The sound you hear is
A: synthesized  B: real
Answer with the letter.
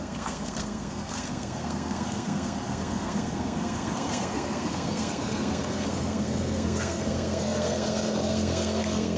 A